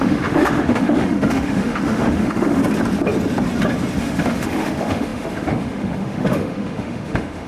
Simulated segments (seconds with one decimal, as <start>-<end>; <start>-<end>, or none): 0.0-2.6; 4.0-7.5